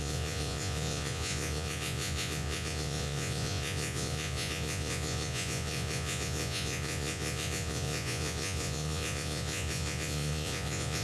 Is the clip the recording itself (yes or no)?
no